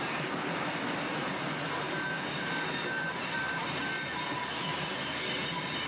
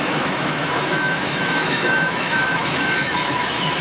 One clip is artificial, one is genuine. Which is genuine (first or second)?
first